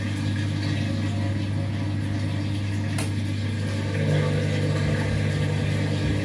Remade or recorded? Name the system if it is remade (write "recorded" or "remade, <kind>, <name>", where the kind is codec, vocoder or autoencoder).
recorded